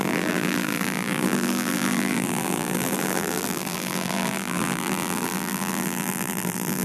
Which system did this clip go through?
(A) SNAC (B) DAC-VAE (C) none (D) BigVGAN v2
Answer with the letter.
D